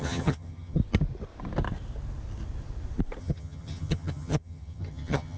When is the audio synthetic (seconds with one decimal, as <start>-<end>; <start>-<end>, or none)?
0.0-0.8; 3.2-5.4

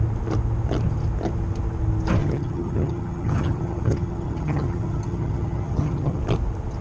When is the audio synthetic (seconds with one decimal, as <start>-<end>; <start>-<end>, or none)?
2.2-6.2

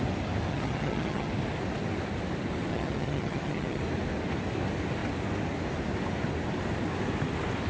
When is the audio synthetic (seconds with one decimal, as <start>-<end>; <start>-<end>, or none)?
0.5-1.3; 2.7-3.8